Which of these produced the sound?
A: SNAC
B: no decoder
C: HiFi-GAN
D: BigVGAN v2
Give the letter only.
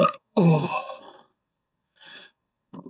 A